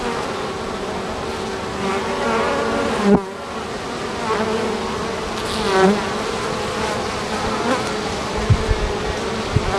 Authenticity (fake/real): real